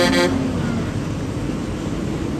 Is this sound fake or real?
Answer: real